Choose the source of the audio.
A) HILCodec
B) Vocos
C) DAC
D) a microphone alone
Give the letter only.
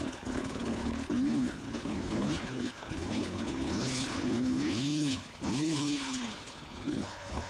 A